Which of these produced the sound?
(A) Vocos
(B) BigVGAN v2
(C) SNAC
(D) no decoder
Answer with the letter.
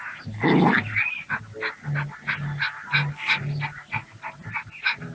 D